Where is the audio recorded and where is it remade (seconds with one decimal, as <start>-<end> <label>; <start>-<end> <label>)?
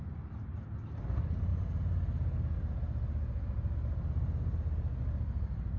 0.0-5.8 recorded